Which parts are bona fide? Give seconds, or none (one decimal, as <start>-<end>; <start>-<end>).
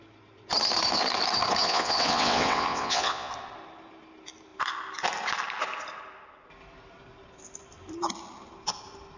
0.0-1.6; 3.3-9.2